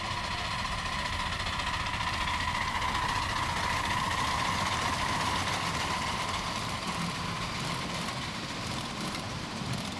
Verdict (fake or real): real